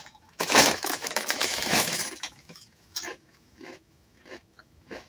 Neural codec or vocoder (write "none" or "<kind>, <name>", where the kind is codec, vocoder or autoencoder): autoencoder, DAC-VAE